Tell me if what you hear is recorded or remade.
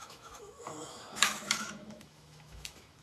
remade